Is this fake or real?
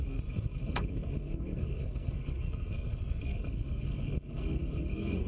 fake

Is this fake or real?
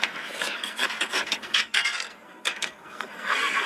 fake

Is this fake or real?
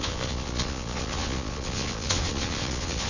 fake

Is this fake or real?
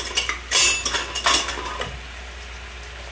real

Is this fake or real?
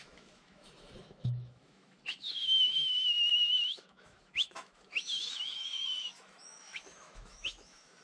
fake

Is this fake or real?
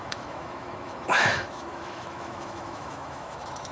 fake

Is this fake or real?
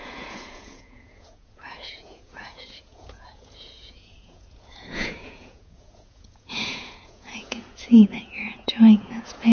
fake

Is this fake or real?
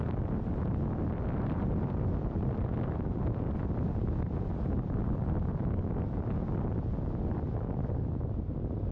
real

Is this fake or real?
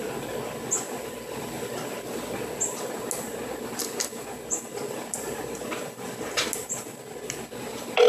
real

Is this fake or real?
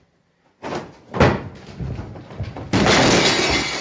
real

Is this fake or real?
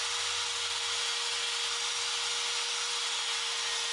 real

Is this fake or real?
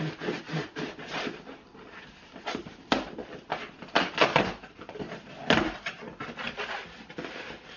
real